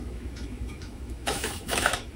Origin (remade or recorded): remade